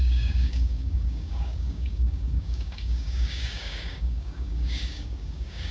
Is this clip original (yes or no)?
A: no